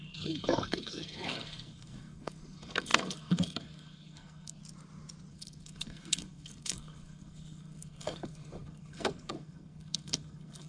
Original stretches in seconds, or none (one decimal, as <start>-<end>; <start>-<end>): 4.6-5.3